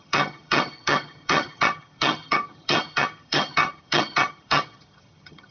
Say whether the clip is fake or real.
fake